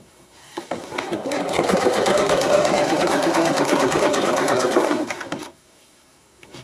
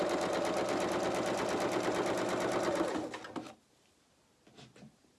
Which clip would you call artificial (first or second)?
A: first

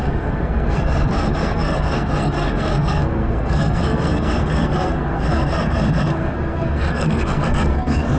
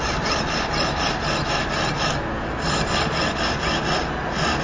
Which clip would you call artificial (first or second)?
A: first